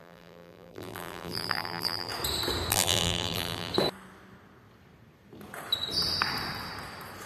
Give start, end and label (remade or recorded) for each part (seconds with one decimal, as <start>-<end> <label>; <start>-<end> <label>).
0.0-2.1 remade; 2.1-2.7 recorded; 2.7-3.7 remade; 3.7-7.3 recorded